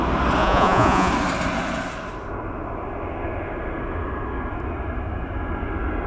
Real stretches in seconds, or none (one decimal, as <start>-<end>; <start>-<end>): 0.0-0.4; 1.1-6.1